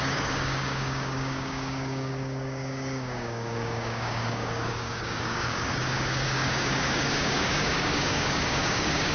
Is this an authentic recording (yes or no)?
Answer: no